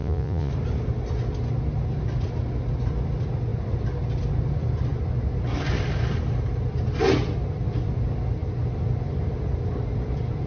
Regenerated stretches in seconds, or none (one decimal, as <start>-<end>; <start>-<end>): 0.0-0.5